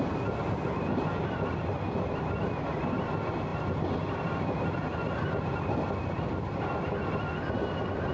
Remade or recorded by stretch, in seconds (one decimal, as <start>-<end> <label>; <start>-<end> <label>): 0.0-8.1 recorded